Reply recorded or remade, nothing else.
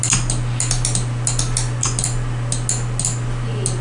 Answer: recorded